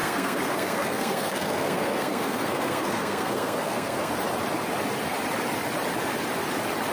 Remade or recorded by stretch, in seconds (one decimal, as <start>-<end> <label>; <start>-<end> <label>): 0.0-4.1 remade; 4.1-6.9 recorded